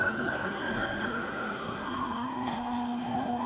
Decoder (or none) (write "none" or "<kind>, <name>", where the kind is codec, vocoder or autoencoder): codec, SNAC